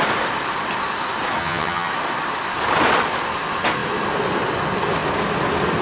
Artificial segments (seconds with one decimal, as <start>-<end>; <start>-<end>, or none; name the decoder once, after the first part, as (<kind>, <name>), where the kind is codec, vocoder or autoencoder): 1.4-1.9 (vocoder, HiFi-GAN)